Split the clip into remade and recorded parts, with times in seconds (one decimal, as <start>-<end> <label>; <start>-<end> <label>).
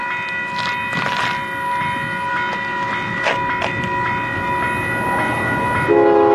0.0-6.3 recorded